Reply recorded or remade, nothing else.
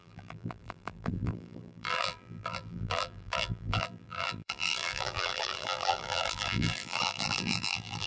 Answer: remade